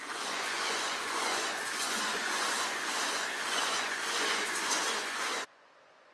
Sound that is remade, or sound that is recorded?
remade